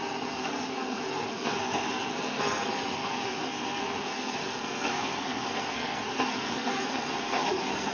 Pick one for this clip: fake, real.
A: fake